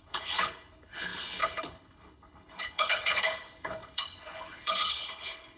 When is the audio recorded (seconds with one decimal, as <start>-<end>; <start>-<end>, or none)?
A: none